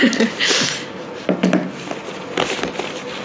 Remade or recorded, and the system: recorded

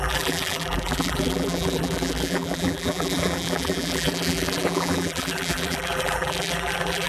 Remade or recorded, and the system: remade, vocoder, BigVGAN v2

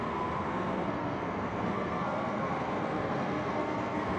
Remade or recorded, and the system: remade, codec, SNAC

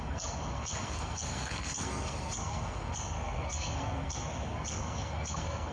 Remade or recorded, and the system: remade, codec, SNAC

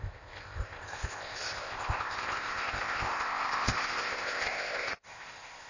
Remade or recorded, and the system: remade, codec, ZipCodec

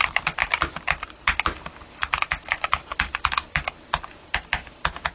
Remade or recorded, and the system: recorded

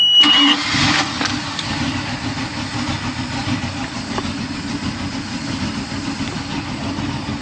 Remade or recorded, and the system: recorded